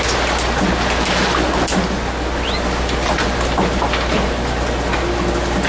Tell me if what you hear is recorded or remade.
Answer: recorded